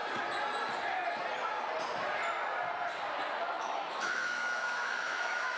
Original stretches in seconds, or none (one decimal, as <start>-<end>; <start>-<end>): 0.0-3.4